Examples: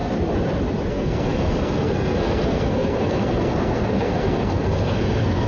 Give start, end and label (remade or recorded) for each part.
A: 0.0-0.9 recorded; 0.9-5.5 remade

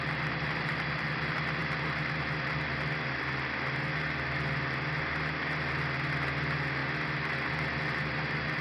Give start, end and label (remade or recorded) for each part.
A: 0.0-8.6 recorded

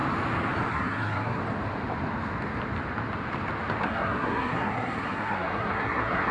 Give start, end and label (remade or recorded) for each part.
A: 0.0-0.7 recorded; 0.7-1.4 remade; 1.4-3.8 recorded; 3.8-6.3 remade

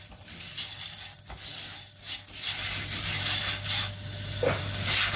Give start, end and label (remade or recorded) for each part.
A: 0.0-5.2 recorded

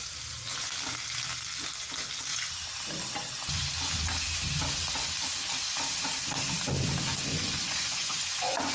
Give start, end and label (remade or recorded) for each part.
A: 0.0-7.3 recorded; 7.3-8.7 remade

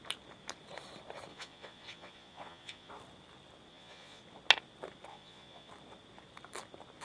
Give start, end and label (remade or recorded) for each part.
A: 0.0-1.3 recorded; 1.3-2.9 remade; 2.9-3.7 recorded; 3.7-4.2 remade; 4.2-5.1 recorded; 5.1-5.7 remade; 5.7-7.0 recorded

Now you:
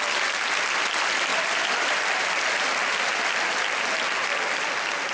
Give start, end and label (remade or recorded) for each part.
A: 0.0-5.1 recorded

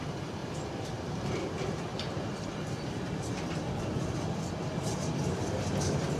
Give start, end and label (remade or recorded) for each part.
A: 0.0-6.2 remade